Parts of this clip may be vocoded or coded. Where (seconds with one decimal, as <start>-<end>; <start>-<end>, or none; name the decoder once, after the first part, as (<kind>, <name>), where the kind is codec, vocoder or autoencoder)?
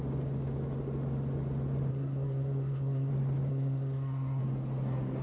1.9-3.1 (codec, SNAC); 3.5-4.4